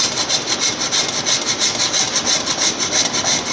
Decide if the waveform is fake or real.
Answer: real